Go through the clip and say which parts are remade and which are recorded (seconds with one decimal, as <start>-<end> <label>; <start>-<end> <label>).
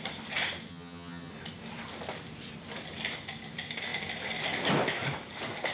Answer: 0.0-0.7 recorded; 0.7-1.3 remade; 1.3-5.7 recorded